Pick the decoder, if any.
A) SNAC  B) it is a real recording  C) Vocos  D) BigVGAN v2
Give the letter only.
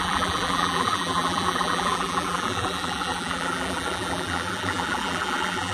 D